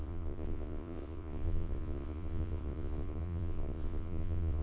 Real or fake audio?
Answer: fake